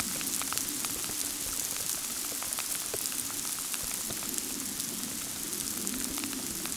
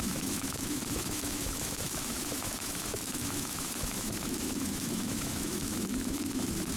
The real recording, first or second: first